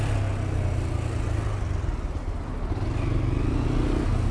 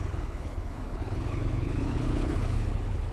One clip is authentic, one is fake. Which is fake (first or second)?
second